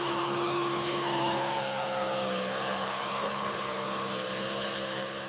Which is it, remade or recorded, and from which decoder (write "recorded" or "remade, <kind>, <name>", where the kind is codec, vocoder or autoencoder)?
remade, codec, HILCodec